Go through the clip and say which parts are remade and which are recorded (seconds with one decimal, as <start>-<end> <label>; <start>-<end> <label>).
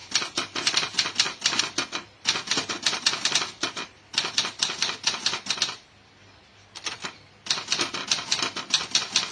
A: 0.0-9.3 recorded